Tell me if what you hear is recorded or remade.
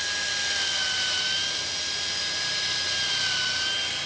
recorded